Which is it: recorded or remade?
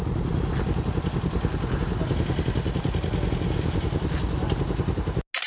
recorded